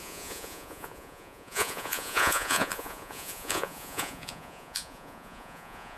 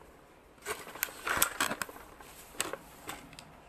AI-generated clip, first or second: first